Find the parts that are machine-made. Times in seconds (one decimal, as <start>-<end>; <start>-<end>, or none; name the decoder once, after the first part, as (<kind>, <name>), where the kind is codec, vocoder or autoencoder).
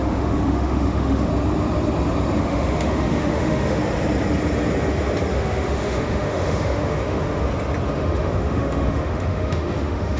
0.0-1.3 (autoencoder, DAC-VAE); 2.4-3.8; 5.3-7.4; 7.9-10.2